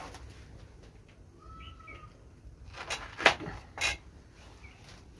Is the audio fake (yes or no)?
no